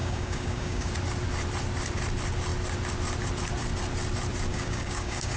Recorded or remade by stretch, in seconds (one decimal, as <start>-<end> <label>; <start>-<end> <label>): 0.0-0.9 remade; 0.9-4.5 recorded; 4.5-5.4 remade